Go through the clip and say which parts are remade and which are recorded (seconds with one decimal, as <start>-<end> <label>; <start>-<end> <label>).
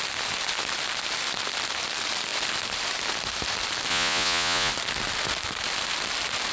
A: 0.0-3.9 recorded; 3.9-4.7 remade; 4.7-6.5 recorded